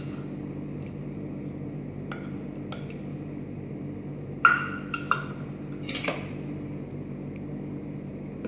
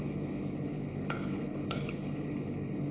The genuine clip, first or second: first